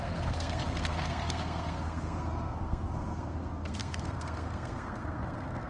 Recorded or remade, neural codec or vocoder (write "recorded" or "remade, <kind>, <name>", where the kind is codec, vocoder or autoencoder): remade, codec, SNAC